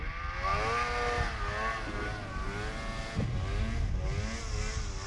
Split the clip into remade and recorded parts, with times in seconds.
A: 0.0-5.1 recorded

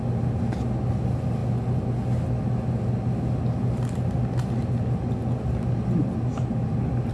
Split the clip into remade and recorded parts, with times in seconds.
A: 0.0-7.1 recorded

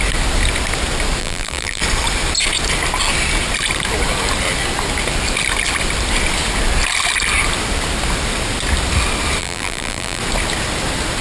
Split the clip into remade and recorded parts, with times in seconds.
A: 0.0-1.2 recorded; 1.2-1.8 remade; 1.8-9.4 recorded; 9.4-10.2 remade; 10.2-11.2 recorded

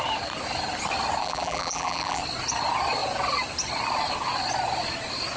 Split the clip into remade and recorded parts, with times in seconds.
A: 0.0-1.2 recorded; 1.2-2.2 remade; 2.2-5.4 recorded

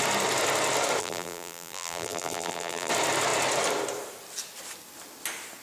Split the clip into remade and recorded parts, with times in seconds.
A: 0.0-1.0 recorded; 1.0-2.9 remade; 2.9-5.6 recorded

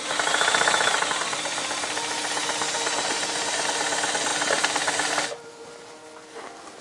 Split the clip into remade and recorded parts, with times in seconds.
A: 0.0-4.3 recorded; 4.3-5.1 remade; 5.1-6.8 recorded

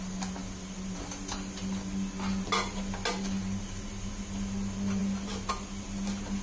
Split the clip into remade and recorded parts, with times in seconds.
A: 0.0-6.4 recorded